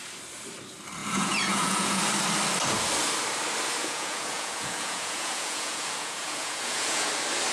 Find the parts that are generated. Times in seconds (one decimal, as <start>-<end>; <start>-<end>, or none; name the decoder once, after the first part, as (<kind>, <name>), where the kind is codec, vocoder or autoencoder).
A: 1.0-2.0 (vocoder, Vocos); 3.8-7.1